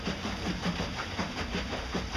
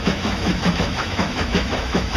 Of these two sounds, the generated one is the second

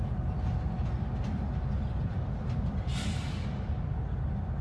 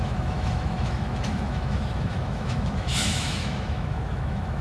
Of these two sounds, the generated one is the second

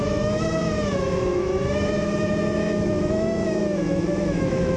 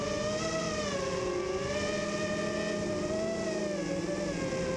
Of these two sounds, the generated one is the first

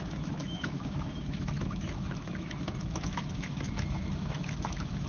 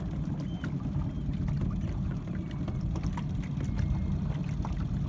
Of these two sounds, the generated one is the first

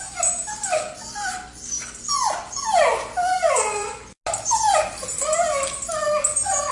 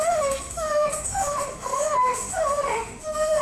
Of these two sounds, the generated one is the second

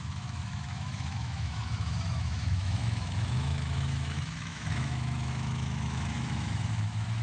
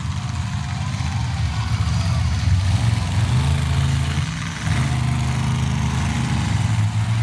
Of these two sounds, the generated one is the first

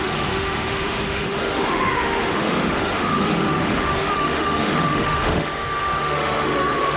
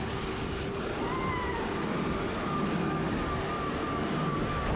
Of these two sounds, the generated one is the first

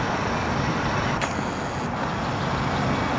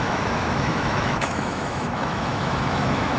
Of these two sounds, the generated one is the second